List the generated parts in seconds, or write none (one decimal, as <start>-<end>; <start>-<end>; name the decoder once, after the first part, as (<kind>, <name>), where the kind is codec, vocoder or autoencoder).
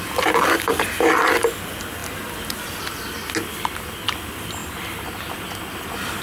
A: none